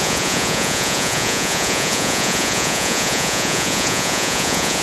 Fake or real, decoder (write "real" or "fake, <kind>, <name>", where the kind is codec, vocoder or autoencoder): fake, vocoder, Vocos